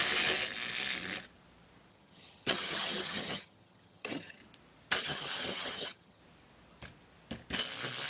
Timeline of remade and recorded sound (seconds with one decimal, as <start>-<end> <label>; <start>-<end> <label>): 0.0-1.9 recorded; 1.9-4.4 remade; 4.4-5.0 recorded; 5.0-6.2 remade; 6.2-8.1 recorded